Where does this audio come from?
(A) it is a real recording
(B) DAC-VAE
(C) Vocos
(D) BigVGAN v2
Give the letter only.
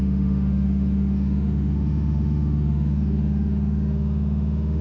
B